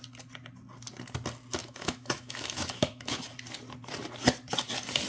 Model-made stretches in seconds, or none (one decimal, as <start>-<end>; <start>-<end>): 1.6-3.2